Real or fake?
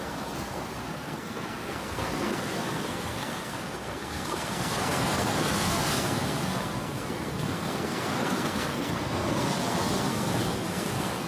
fake